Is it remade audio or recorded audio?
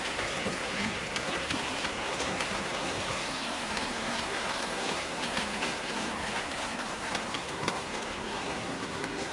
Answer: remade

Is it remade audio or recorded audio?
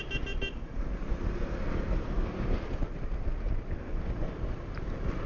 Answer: recorded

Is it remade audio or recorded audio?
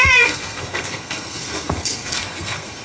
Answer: remade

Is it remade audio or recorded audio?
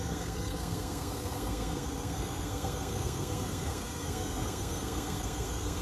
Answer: remade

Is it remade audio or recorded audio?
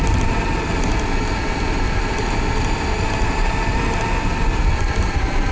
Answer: recorded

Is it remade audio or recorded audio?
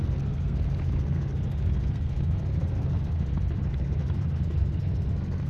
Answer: remade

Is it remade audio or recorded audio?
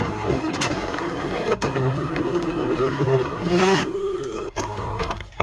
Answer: remade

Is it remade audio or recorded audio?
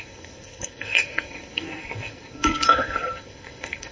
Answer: remade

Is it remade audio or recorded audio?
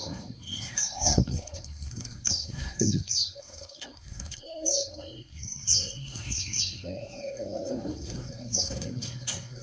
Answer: remade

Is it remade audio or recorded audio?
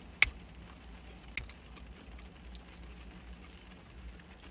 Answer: recorded